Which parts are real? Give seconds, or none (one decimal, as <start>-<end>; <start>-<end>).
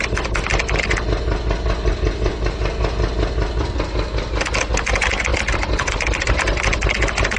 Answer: 0.0-5.3; 6.9-7.4